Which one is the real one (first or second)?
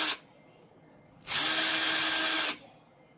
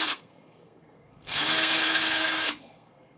first